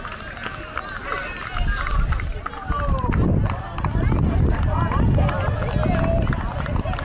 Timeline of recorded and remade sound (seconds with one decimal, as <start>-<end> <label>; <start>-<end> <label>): 0.0-7.0 recorded